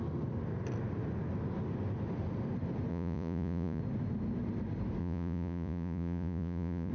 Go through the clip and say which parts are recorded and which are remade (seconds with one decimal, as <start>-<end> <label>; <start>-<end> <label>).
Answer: 0.0-2.9 recorded; 2.9-3.8 remade; 3.8-5.0 recorded; 5.0-6.9 remade